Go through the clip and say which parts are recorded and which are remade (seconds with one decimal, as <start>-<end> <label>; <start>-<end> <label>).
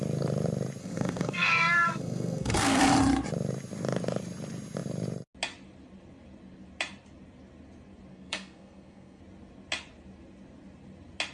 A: 0.0-0.8 recorded; 0.8-2.8 remade; 2.8-8.1 recorded; 8.1-9.2 remade; 9.2-11.3 recorded